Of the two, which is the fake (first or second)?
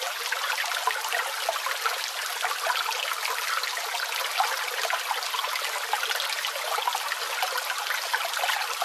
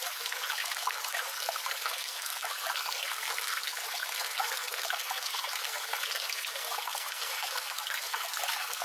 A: second